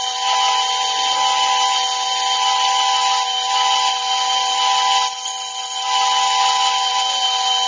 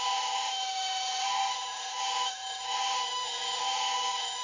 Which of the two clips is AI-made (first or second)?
second